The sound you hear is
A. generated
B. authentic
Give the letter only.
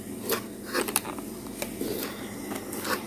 B